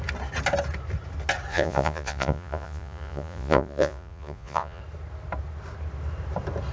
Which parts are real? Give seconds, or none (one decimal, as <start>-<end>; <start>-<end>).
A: 0.0-1.5; 4.8-6.7